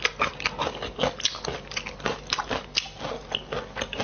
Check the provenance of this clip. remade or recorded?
recorded